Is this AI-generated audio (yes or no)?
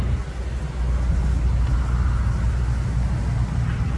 no